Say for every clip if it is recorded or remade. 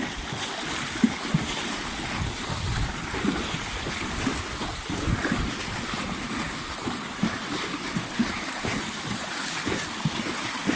recorded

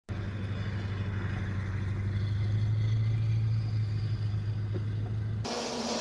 recorded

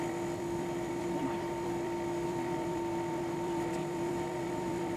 remade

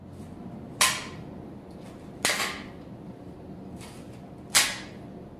recorded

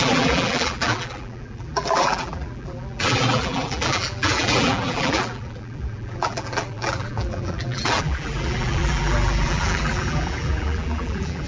remade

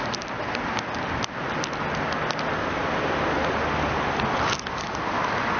recorded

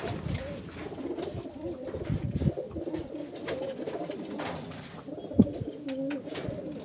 recorded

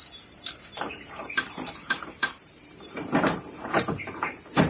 remade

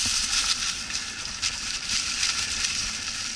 remade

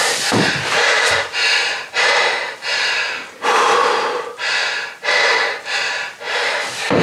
remade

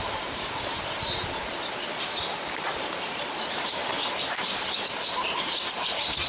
remade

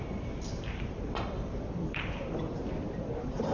remade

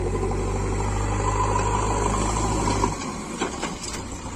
recorded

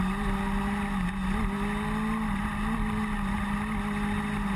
recorded